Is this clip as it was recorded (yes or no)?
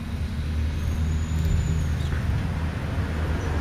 yes